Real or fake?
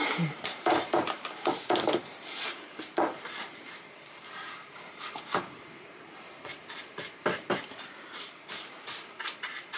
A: fake